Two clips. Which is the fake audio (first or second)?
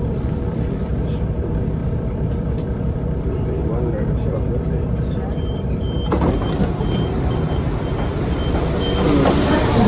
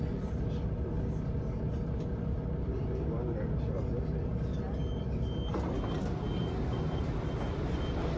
first